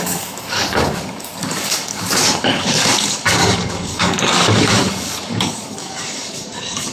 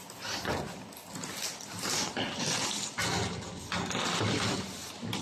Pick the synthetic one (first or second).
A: first